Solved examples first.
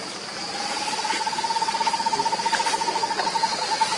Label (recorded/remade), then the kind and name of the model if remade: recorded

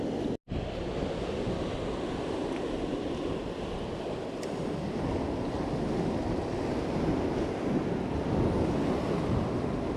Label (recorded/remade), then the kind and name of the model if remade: recorded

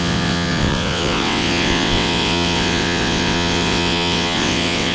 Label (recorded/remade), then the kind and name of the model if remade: remade, vocoder, WaveNeXt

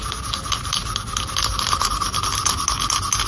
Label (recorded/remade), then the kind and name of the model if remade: recorded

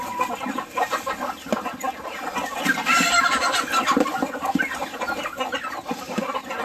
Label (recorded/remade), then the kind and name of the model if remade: recorded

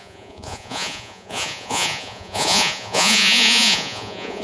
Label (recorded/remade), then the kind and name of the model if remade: remade, vocoder, Vocos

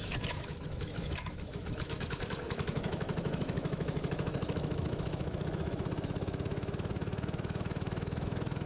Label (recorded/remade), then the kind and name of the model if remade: remade, autoencoder, DAC-VAE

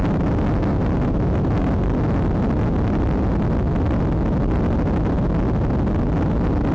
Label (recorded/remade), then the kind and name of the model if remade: recorded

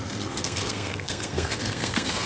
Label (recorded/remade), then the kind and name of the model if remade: remade, codec, SNAC